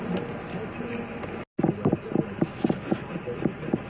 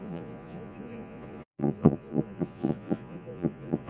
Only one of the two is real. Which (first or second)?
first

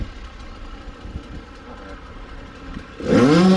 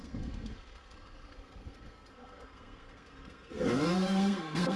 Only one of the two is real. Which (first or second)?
first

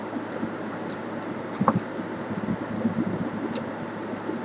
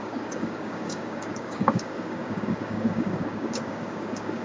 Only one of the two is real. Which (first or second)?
first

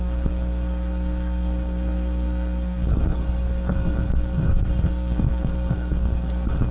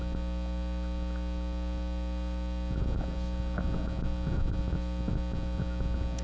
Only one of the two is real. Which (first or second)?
second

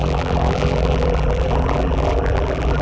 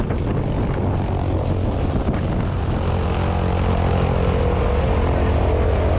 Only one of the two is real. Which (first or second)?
second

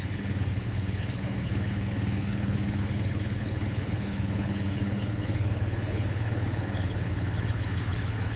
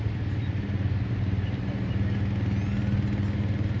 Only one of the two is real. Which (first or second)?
second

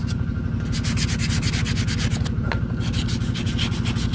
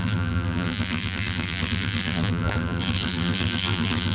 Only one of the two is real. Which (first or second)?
first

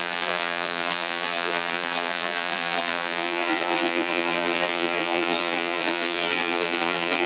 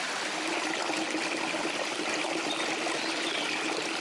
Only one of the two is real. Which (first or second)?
second